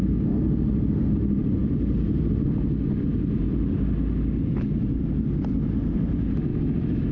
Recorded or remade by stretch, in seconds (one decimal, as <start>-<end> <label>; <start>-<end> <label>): 0.0-6.5 recorded; 6.5-7.1 remade